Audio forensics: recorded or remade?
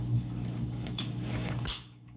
remade